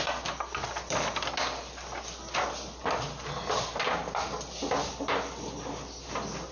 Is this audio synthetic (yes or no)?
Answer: no